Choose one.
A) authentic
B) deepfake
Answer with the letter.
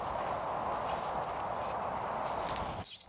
A